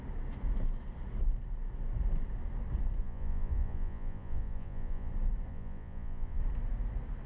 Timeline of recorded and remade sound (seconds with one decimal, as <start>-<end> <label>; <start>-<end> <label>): 0.0-3.0 recorded; 3.0-5.1 remade; 5.1-5.5 recorded; 5.5-6.4 remade; 6.4-7.3 recorded